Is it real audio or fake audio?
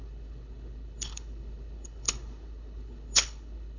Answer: fake